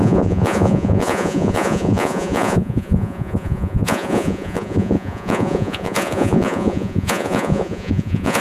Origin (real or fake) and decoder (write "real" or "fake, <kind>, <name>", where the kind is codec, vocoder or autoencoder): fake, vocoder, Vocos